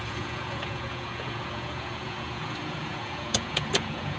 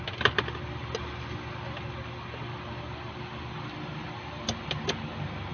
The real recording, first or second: second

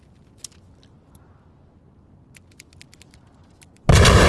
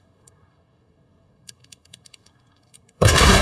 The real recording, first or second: first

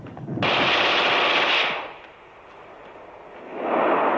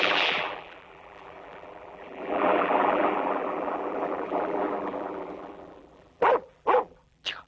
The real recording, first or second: first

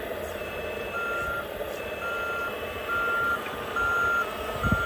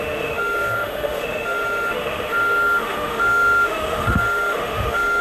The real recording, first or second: first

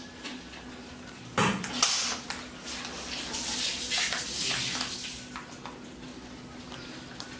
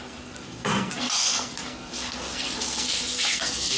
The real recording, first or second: first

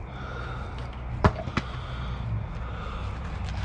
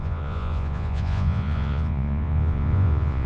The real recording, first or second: first